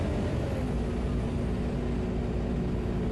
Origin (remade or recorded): recorded